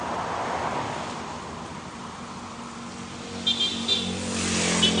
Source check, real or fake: real